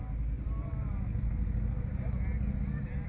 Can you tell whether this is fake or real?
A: real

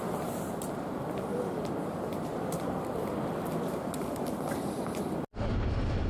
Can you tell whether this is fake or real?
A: fake